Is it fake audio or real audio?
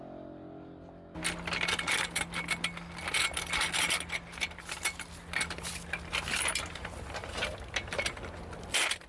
real